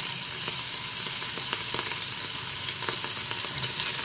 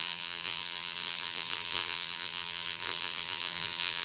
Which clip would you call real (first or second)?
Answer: first